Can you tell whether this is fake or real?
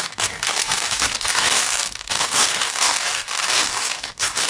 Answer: fake